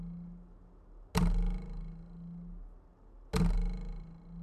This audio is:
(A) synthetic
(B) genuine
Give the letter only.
B